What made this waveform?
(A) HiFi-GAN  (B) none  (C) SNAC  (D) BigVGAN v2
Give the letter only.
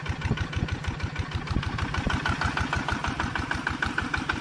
B